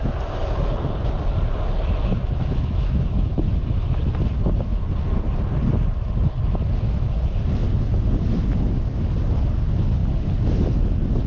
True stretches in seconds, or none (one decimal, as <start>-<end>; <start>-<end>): 0.0-2.0; 4.0-11.3

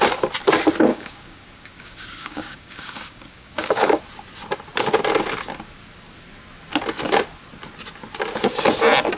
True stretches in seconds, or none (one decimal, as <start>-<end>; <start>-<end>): 0.0-0.9; 4.0-9.2

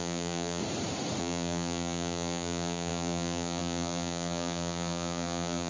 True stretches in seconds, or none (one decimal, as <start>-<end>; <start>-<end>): 0.6-1.2

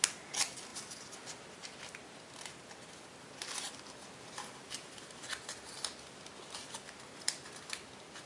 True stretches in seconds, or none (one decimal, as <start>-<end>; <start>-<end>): 0.0-8.3